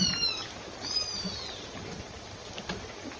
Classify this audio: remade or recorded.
recorded